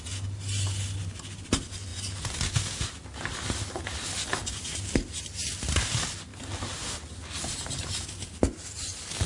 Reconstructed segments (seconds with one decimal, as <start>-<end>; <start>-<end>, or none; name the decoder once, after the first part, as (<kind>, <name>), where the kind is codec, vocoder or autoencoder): none

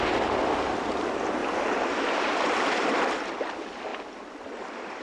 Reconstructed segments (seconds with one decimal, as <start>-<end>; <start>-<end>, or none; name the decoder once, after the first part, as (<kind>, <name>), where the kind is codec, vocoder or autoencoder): 1.4-3.3 (vocoder, BigVGAN v2); 3.9-4.6

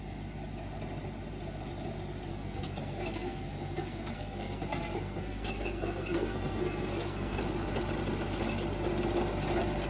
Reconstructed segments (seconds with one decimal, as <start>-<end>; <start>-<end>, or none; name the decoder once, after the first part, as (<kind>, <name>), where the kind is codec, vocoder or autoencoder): 2.3-7.4 (codec, SNAC)

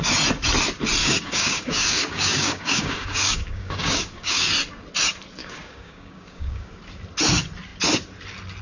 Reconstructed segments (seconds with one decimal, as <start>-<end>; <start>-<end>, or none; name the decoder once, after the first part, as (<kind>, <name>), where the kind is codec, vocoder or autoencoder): 1.0-4.5 (codec, DAC); 5.4-6.7